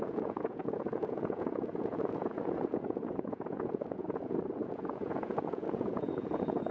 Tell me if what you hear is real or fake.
fake